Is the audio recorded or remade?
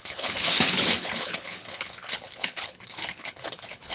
remade